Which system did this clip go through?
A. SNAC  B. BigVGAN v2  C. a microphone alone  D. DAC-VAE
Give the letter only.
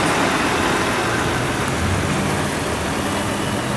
C